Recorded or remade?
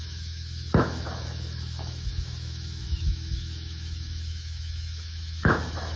remade